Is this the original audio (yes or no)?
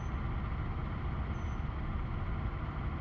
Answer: yes